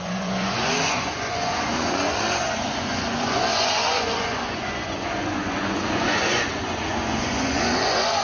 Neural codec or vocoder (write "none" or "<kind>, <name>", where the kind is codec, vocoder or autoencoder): vocoder, Vocos